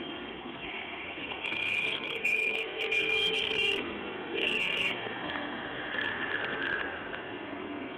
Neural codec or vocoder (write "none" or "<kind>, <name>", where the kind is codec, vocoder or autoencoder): codec, SNAC